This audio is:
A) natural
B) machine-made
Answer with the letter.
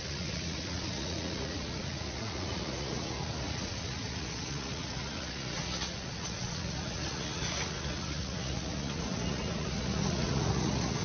B